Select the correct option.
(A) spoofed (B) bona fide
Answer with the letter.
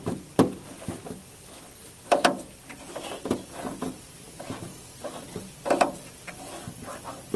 A